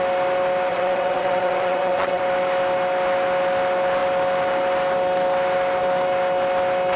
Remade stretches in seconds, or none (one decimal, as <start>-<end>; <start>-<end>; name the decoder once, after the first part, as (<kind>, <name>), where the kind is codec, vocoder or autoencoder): 0.7-2.2 (vocoder, WaveNeXt)